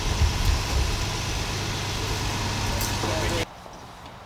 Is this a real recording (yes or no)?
yes